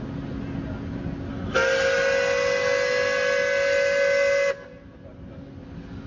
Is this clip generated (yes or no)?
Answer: no